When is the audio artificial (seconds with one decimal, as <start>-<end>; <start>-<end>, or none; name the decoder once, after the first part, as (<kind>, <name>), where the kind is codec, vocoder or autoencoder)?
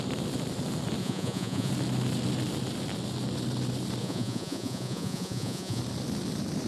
1.0-1.7 (vocoder, Vocos); 4.0-5.8